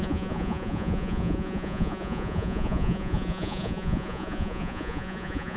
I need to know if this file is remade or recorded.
remade